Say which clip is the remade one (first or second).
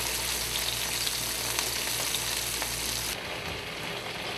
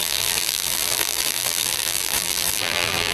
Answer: second